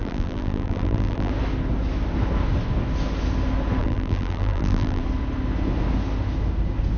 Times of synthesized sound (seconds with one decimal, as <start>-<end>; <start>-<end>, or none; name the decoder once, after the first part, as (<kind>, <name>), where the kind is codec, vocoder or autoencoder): 0.0-1.3 (vocoder, BigVGAN v2); 3.8-5.0